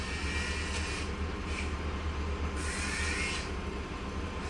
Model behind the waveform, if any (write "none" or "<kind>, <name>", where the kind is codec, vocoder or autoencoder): none